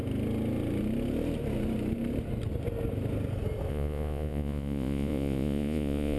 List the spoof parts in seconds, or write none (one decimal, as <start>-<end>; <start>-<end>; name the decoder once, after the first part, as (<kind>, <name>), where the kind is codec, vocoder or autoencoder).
3.7-6.2 (vocoder, Vocos)

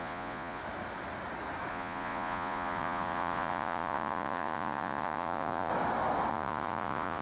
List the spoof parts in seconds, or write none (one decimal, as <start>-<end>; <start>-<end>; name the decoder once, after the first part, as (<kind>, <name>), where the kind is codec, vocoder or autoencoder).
0.0-0.6 (vocoder, Vocos); 1.7-5.7; 6.3-7.2

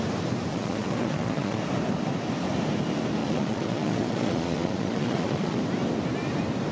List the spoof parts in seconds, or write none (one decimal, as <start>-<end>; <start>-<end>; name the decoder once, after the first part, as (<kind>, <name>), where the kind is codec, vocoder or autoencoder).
0.5-1.6 (vocoder, Vocos); 3.2-5.6

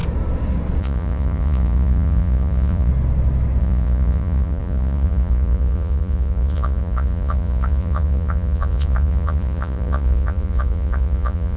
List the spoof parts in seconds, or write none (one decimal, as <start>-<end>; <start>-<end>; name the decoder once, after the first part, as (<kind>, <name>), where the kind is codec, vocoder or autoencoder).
0.8-2.9 (vocoder, Vocos); 3.6-11.6

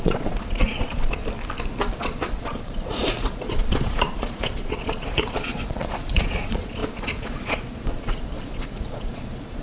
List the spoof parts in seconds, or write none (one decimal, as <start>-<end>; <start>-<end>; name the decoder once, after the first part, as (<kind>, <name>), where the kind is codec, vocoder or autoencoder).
0.0-1.2 (vocoder, Vocos); 2.0-9.6